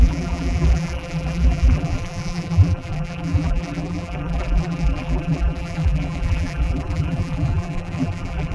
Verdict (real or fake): fake